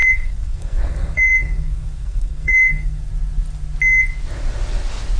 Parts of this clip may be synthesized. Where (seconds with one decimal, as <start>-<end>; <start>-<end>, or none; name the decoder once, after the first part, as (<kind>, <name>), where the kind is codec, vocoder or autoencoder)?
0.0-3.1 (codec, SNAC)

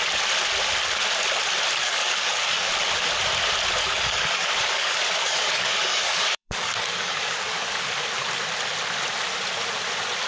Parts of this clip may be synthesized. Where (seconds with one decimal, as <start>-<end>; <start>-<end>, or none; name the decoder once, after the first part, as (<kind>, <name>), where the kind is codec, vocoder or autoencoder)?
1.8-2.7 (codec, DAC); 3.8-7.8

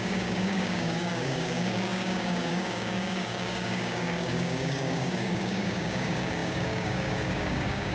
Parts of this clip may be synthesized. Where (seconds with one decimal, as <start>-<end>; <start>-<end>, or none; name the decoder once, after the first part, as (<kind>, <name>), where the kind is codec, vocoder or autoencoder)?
0.0-7.9 (codec, DAC)

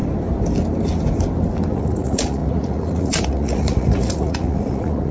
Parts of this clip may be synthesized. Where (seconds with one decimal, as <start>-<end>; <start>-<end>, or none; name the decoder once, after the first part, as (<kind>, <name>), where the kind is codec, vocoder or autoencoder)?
1.7-5.1 (vocoder, Vocos)